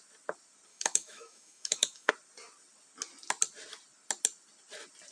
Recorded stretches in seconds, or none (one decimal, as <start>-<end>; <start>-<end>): 0.0-0.7; 2.1-5.1